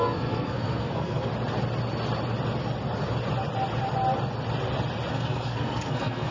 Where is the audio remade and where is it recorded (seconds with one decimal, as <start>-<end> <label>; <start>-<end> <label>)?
0.0-1.3 remade; 1.3-5.1 recorded; 5.1-6.3 remade